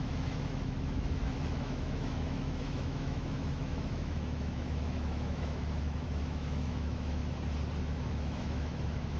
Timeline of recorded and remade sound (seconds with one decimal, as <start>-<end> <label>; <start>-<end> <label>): 0.0-7.2 remade; 7.2-7.8 recorded; 7.8-9.2 remade